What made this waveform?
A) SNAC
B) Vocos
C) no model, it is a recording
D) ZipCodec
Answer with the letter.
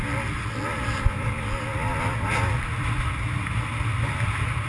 C